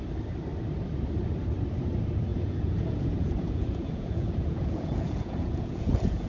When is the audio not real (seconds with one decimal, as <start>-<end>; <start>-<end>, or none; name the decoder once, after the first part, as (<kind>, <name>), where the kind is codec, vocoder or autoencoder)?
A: 2.3-6.3 (vocoder, Vocos)